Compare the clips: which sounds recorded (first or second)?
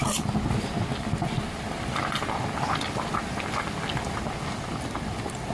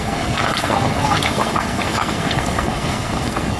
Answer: first